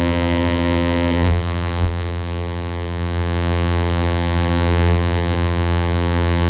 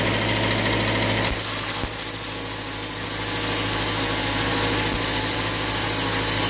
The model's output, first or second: first